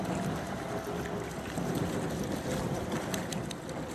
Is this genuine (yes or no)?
yes